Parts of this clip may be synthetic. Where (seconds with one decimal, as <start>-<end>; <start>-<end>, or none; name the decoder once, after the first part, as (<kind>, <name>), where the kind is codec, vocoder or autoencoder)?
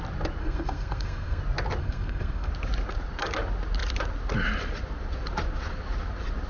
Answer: 0.4-1.4 (codec, SNAC); 1.8-2.5